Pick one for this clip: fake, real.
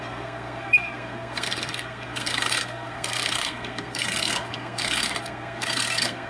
fake